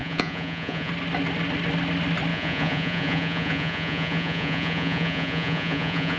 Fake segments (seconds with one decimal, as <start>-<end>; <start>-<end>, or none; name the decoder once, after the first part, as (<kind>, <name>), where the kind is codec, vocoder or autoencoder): 0.0-0.9 (vocoder, Vocos); 2.3-6.2